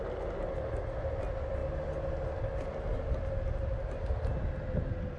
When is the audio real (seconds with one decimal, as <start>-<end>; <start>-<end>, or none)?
0.0-5.2